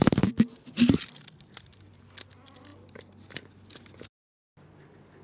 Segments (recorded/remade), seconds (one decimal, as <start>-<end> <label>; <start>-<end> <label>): 0.0-5.2 recorded